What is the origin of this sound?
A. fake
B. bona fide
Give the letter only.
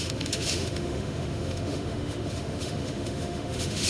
A